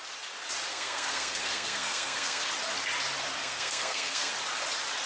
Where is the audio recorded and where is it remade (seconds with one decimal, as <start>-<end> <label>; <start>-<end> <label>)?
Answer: 0.0-0.7 recorded; 0.7-2.5 remade; 2.5-3.4 recorded; 3.4-4.3 remade; 4.3-5.1 recorded